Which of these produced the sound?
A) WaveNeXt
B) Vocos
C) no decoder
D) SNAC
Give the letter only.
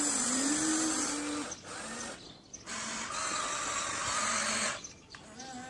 C